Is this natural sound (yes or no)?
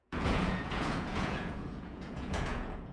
no